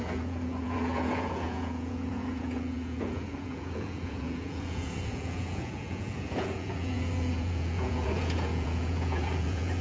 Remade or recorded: remade